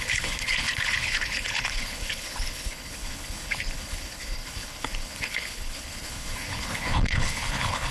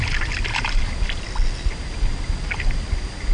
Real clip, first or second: second